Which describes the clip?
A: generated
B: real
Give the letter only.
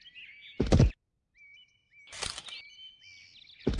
B